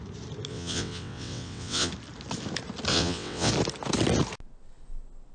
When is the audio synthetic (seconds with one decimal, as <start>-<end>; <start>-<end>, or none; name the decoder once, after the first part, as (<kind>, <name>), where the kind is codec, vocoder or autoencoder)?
0.5-1.9 (vocoder, WaveNeXt); 2.9-3.5